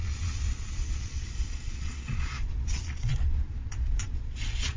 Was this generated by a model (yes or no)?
yes